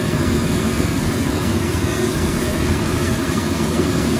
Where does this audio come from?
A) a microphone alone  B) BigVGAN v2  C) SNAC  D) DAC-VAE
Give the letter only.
C